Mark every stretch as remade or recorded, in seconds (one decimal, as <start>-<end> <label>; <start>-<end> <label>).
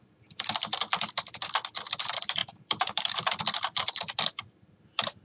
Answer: 0.0-2.4 recorded; 2.4-3.2 remade; 3.2-5.2 recorded